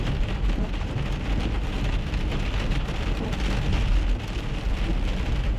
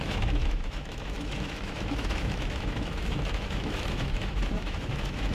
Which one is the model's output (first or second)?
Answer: second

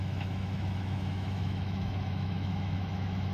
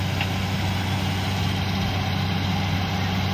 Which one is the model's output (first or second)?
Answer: first